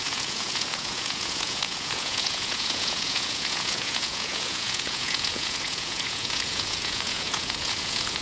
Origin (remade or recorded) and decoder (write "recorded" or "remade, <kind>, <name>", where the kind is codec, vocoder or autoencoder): remade, vocoder, Vocos